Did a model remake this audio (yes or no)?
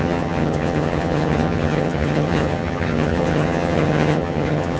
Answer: yes